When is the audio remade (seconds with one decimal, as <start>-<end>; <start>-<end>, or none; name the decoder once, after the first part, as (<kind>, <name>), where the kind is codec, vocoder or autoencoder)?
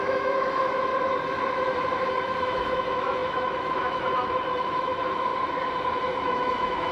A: 0.0-0.9 (autoencoder, DAC-VAE); 2.1-5.3; 6.2-6.9